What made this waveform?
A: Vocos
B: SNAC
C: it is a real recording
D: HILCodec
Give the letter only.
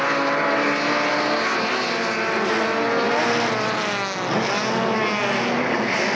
C